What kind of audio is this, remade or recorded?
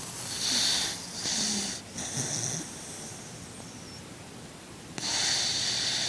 recorded